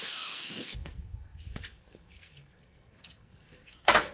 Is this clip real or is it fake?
fake